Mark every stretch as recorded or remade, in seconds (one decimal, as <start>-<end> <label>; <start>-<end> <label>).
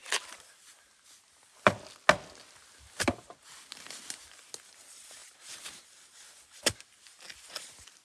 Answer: 0.0-8.0 recorded